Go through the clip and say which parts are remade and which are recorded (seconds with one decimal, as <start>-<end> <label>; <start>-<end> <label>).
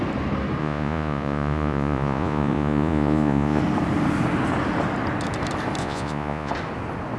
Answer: 0.0-0.6 recorded; 0.6-3.6 remade; 3.6-5.8 recorded; 5.8-6.5 remade; 6.5-7.2 recorded